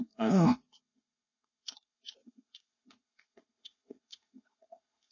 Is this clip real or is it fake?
fake